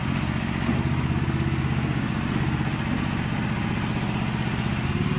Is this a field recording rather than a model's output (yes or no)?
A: yes